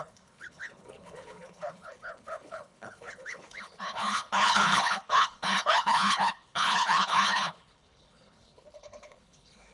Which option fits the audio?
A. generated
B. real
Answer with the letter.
A